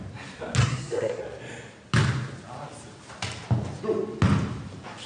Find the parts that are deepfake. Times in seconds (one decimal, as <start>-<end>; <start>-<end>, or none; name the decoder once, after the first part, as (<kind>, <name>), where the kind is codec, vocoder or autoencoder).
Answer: 0.6-1.2 (codec, SNAC)

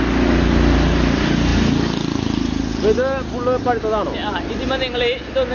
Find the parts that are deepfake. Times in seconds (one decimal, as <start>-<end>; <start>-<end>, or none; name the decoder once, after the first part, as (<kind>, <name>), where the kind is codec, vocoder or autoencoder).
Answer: none

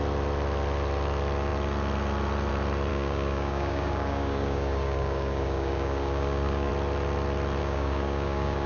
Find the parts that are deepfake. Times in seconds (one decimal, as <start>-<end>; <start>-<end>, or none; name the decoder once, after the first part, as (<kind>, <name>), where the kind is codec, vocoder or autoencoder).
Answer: 2.9-6.7 (codec, DAC); 7.6-8.7

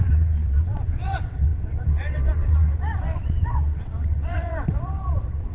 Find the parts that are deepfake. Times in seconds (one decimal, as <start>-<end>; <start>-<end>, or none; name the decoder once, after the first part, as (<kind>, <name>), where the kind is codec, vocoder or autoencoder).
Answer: 0.0-5.5 (vocoder, WaveNeXt)

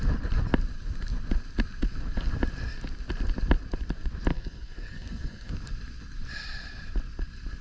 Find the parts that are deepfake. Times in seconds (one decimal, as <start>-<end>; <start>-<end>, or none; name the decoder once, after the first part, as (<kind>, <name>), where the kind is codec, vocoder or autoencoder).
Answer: 4.3-5.5 (codec, SNAC)

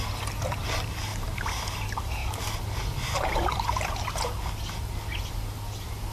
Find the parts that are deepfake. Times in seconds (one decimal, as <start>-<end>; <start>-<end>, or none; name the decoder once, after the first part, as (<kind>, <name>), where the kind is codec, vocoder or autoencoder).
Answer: 1.1-1.6 (vocoder, BigVGAN v2)